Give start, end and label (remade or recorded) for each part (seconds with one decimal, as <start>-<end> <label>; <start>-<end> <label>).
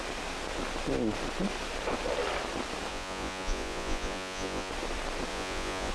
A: 0.0-2.9 recorded; 2.9-4.7 remade; 4.7-5.3 recorded; 5.3-5.9 remade